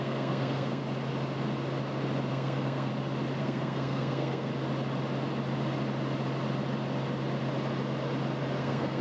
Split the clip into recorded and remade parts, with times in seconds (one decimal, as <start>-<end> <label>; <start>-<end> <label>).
0.0-0.8 remade; 0.8-2.3 recorded; 2.3-2.9 remade; 2.9-3.4 recorded; 3.4-4.5 remade; 4.5-8.6 recorded; 8.6-9.0 remade

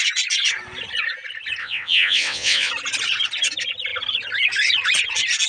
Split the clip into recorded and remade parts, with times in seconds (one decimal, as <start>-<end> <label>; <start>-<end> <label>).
0.0-1.6 recorded; 1.6-2.7 remade; 2.7-5.5 recorded

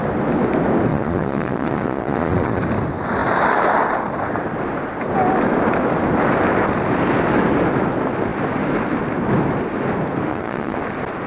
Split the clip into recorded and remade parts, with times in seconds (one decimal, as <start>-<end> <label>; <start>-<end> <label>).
0.0-0.9 recorded; 0.9-2.6 remade; 2.6-10.3 recorded; 10.3-10.8 remade; 10.8-11.3 recorded

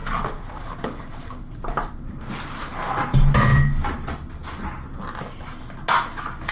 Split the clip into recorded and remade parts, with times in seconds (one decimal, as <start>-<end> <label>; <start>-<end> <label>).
0.0-2.1 remade; 2.1-6.5 recorded

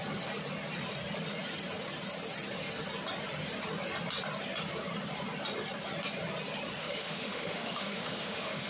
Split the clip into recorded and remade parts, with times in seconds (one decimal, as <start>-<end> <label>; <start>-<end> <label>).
0.0-6.8 recorded; 6.8-8.7 remade

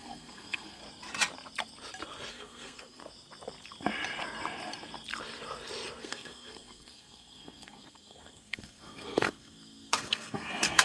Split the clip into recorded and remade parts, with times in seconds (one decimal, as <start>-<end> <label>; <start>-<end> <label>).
0.0-0.8 remade; 0.8-2.3 recorded; 2.3-3.0 remade; 3.0-6.0 recorded; 6.0-10.8 remade

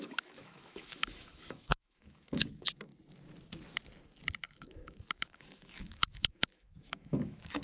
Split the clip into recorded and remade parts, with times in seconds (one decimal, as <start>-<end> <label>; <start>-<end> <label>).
0.0-2.9 remade; 2.9-4.5 recorded; 4.5-7.6 remade